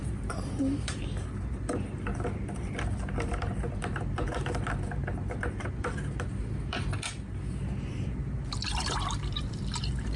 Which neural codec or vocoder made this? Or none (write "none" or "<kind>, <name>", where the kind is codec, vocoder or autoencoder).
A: vocoder, BigVGAN v2